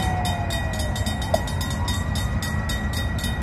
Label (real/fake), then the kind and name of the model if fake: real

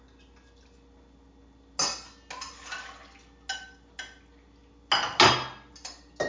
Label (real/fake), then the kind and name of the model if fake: real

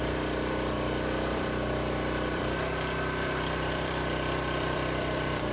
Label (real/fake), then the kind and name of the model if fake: fake, vocoder, BigVGAN v2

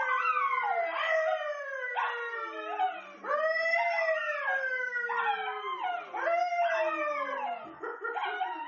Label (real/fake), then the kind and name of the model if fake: real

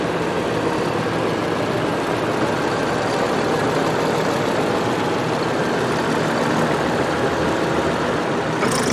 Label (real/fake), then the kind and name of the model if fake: real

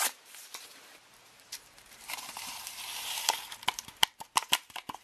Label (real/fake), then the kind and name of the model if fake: fake, vocoder, BigVGAN v2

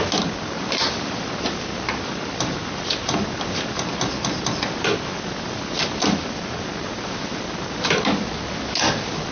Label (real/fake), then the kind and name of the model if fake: real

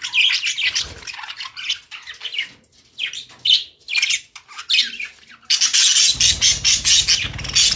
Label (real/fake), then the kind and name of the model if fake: real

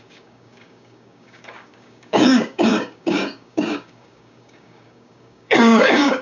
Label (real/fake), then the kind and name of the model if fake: fake, codec, DAC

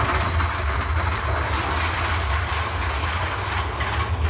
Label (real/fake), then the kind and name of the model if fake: real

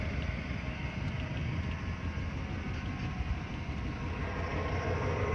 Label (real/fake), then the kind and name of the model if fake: real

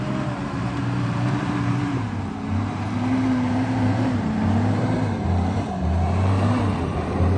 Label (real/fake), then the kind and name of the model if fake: fake, vocoder, BigVGAN v2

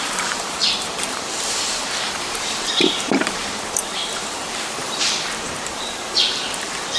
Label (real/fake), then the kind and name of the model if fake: fake, vocoder, BigVGAN v2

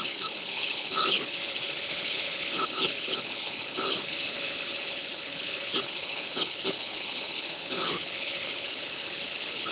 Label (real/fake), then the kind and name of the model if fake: fake, codec, HILCodec